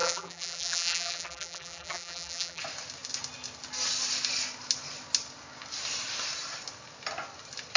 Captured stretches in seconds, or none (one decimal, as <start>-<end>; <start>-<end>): 2.6-7.8